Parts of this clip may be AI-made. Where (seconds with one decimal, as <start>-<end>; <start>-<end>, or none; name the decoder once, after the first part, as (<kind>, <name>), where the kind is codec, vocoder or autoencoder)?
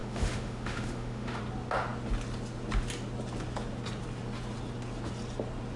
0.0-1.4 (autoencoder, DAC-VAE)